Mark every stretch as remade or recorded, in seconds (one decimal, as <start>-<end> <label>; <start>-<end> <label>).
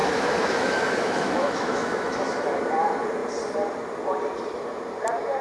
0.0-2.6 remade; 2.6-5.4 recorded